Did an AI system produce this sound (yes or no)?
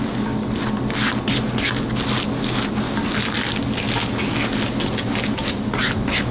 no